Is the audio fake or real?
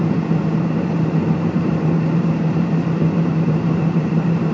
fake